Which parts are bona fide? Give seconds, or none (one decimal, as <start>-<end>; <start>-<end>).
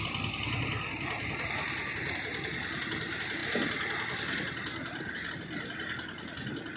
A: 0.0-6.8